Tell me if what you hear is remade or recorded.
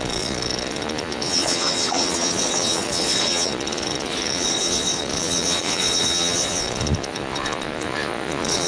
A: remade